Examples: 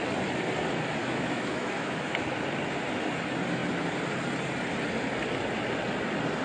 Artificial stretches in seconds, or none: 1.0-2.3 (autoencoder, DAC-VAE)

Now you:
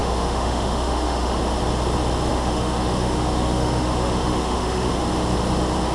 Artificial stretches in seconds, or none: 0.0-1.4 (autoencoder, DAC-VAE); 2.3-4.9

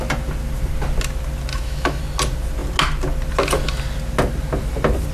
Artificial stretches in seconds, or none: 1.5-2.0 (autoencoder, DAC-VAE)

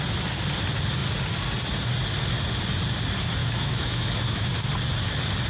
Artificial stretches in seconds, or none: 3.4-4.5 (autoencoder, DAC-VAE)

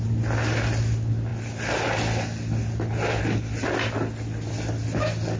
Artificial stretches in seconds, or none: none